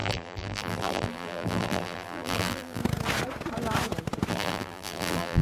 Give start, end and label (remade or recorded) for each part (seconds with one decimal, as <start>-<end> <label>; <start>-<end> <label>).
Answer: 0.0-2.8 remade; 2.8-4.3 recorded; 4.3-5.4 remade